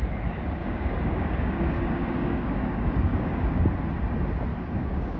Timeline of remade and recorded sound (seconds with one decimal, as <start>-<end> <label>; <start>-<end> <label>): 0.0-0.6 recorded; 0.6-3.6 remade; 3.6-4.5 recorded; 4.5-5.2 remade